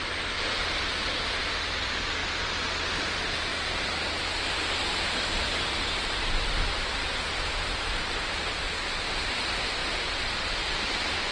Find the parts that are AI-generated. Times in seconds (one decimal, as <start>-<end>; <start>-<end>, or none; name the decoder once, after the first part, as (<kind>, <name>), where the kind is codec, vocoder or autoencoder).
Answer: 0.0-2.2 (vocoder, BigVGAN v2); 2.9-11.3